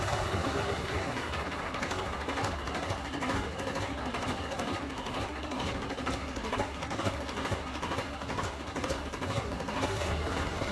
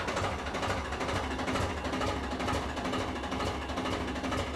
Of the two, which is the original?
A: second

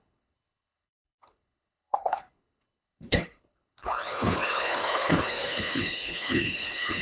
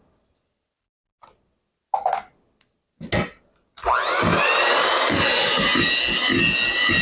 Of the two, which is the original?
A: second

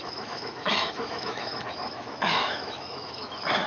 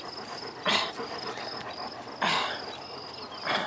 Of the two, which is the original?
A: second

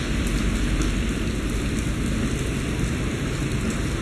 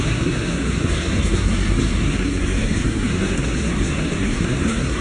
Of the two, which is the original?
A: first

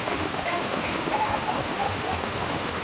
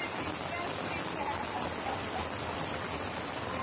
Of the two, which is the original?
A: second